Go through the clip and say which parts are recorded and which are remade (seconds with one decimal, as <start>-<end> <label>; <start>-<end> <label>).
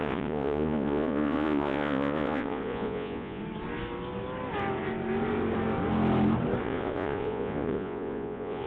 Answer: 0.0-3.4 remade; 3.4-6.6 recorded; 6.6-8.7 remade